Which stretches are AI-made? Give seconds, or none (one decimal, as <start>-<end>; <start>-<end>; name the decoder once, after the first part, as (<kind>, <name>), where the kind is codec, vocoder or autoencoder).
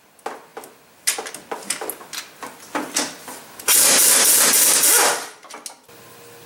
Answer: none